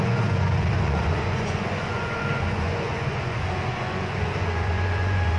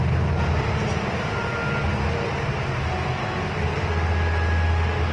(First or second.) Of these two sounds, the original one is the second